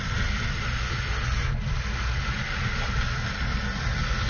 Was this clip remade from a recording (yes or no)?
no